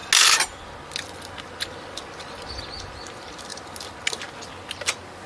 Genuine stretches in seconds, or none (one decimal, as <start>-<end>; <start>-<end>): 0.0-5.3